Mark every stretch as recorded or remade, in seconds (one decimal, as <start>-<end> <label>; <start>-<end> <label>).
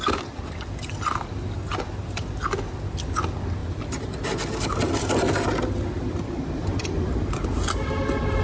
0.0-8.4 recorded